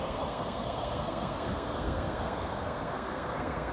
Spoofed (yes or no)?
yes